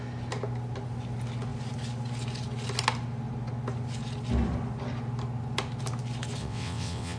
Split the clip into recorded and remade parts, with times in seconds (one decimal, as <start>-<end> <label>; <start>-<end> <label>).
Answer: 0.0-6.4 recorded; 6.4-7.2 remade